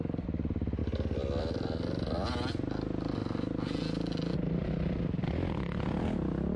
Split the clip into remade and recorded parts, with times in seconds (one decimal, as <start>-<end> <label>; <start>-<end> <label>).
0.0-6.6 recorded